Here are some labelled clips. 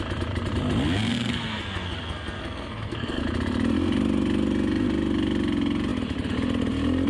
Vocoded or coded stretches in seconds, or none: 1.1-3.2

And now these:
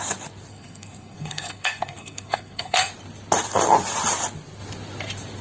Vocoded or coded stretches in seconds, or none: 0.5-2.9